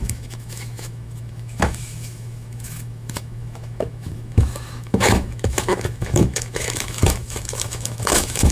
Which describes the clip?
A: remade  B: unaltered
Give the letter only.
A